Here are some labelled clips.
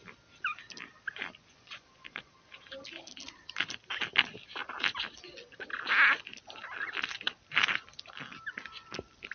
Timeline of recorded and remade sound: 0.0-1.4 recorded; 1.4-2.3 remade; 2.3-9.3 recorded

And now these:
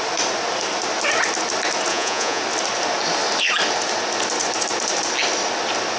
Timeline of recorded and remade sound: 0.0-1.9 recorded; 1.9-2.4 remade; 2.4-6.0 recorded

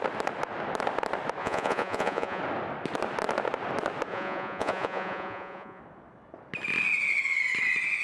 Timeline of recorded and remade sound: 0.0-1.4 recorded; 1.4-2.4 remade; 2.4-4.1 recorded; 4.1-5.8 remade; 5.8-8.0 recorded

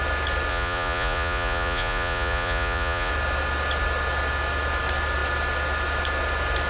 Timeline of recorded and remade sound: 0.0-0.5 recorded; 0.5-3.1 remade; 3.1-6.7 recorded

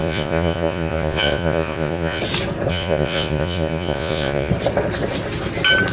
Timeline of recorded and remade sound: 0.0-2.2 remade; 2.2-2.7 recorded; 2.7-4.5 remade; 4.5-5.9 recorded